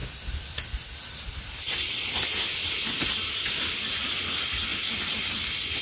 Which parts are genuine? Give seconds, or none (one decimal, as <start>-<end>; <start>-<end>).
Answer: 0.0-5.8